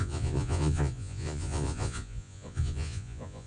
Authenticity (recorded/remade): remade